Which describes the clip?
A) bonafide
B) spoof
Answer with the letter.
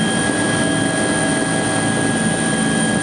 A